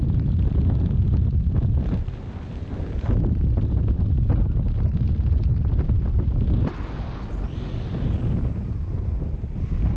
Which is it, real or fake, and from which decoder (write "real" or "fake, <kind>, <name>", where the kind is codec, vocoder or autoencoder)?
real